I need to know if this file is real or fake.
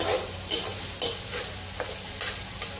real